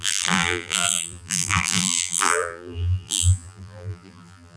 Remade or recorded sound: remade